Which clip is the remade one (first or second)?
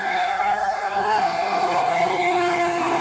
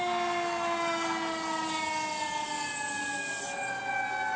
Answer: first